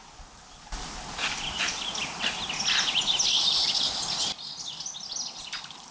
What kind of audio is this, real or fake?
real